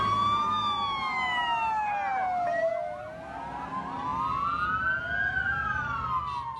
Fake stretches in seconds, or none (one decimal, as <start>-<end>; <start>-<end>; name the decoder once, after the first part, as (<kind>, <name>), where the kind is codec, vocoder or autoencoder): none